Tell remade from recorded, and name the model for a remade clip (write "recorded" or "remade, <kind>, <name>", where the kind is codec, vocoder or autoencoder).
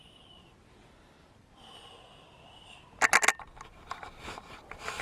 recorded